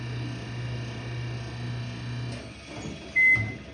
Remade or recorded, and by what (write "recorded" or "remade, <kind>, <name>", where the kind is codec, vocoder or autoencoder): recorded